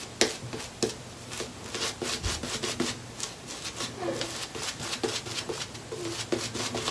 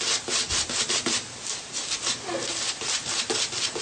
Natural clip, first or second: first